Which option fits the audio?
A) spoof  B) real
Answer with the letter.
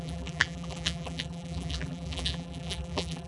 A